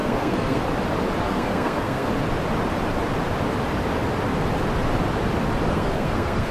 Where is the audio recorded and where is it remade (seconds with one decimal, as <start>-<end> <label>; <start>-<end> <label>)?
0.0-0.6 remade; 0.6-1.2 recorded; 1.2-2.1 remade; 2.1-5.7 recorded; 5.7-6.5 remade